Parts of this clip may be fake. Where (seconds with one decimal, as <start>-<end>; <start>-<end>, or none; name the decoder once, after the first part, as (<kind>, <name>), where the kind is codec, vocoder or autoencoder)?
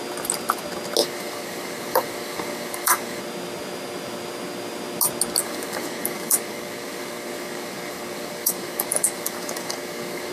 1.0-3.2 (codec, DAC); 5.4-10.3